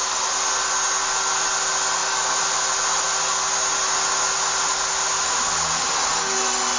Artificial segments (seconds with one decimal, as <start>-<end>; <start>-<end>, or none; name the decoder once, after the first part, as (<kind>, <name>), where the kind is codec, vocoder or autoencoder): none